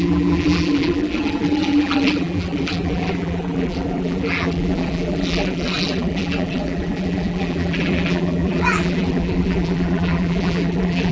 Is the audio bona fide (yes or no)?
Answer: no